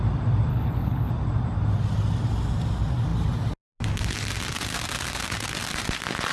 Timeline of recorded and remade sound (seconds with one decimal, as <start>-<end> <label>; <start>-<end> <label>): 0.0-0.5 recorded; 0.5-1.1 remade; 1.1-6.3 recorded